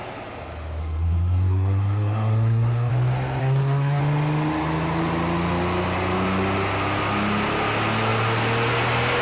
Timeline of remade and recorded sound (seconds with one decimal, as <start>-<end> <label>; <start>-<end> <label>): 0.0-0.8 recorded; 0.8-2.9 remade; 2.9-3.4 recorded; 3.4-4.0 remade; 4.0-9.2 recorded